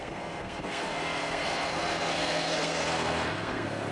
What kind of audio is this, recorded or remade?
remade